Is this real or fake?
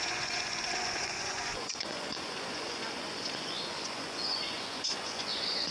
fake